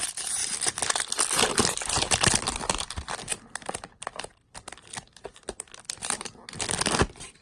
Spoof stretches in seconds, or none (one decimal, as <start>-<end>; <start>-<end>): 0.4-1.0